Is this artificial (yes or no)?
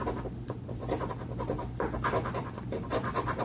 yes